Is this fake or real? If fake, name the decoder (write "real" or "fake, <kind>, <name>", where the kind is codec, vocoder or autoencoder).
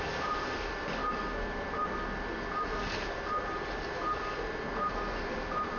real